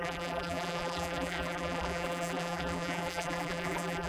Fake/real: fake